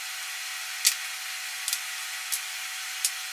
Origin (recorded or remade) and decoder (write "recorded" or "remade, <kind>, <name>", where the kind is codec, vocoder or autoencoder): recorded